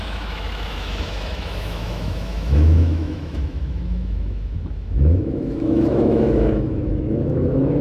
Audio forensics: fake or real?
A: fake